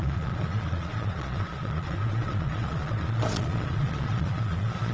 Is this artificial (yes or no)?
yes